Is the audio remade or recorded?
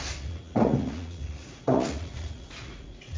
remade